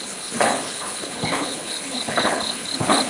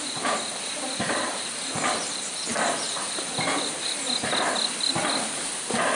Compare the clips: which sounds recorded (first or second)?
second